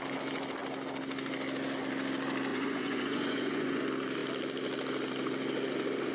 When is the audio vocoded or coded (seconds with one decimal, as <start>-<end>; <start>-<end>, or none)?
2.5-3.8